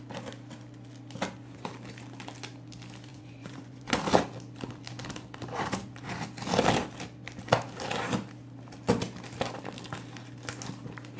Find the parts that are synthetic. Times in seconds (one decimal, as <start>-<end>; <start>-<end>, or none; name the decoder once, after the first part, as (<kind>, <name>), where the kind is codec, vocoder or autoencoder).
3.1-4.0 (vocoder, Vocos)